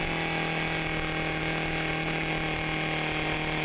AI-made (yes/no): no